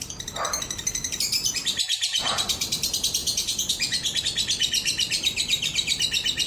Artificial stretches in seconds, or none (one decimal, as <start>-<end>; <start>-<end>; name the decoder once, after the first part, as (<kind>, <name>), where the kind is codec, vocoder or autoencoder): 1.9-2.4 (vocoder, Vocos); 3.2-4.2